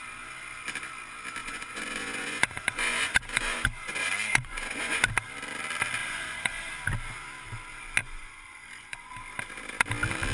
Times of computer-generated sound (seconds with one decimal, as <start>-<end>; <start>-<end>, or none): 1.4-5.0; 6.0-6.7; 8.0-9.1